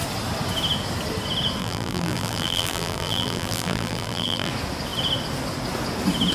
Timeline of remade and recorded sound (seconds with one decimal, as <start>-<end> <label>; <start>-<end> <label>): 0.0-1.6 recorded; 1.6-4.5 remade; 4.5-6.3 recorded